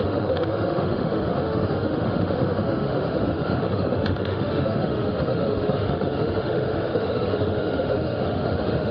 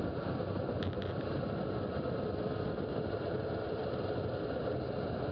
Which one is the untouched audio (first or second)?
second